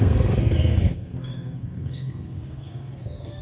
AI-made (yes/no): yes